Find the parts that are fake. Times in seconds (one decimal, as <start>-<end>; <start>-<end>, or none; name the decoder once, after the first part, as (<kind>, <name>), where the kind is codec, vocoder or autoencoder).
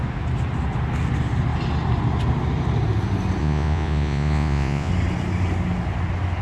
3.4-4.9 (vocoder, Vocos)